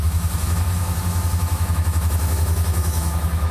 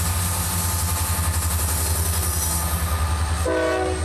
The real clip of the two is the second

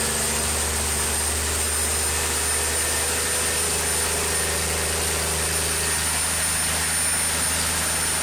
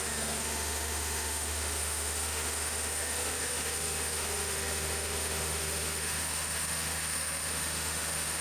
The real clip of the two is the first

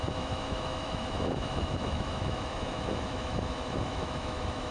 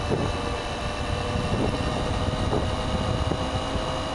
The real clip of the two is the second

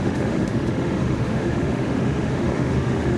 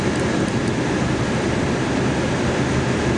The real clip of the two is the second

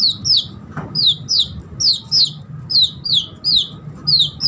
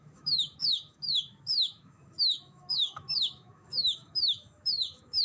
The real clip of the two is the first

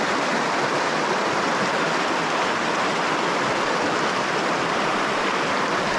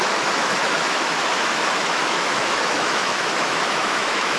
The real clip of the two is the first